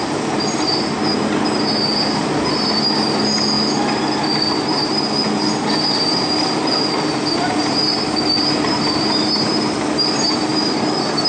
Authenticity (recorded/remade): recorded